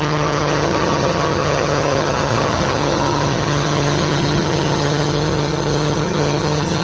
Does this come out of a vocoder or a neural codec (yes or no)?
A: yes